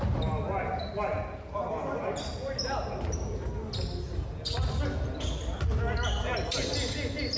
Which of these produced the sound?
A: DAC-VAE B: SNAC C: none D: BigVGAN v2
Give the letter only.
C